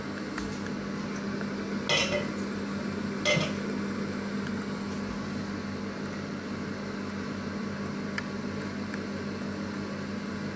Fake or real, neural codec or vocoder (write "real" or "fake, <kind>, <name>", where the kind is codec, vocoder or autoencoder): real